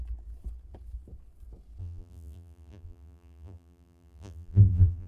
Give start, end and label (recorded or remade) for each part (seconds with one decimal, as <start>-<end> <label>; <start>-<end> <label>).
0.0-1.8 recorded; 1.8-5.1 remade